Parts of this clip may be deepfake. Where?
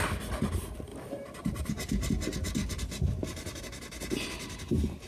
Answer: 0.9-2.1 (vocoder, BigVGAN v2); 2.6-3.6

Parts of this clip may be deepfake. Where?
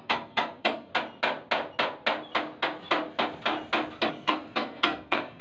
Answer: 0.0-0.9 (codec, SNAC); 4.1-5.4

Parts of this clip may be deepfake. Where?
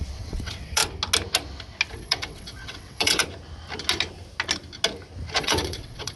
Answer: 0.0-0.8 (vocoder, WaveNeXt); 1.9-3.2; 5.4-6.2